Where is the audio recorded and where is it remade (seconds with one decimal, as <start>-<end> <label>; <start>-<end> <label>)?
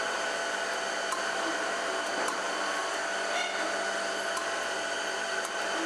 0.0-2.8 remade; 2.8-5.5 recorded; 5.5-5.9 remade